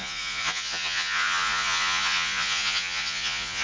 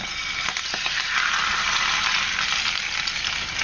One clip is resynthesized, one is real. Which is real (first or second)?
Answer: second